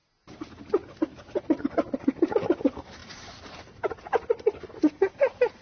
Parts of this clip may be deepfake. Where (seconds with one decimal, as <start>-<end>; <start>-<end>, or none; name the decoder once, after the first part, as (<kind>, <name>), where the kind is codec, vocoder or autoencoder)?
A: none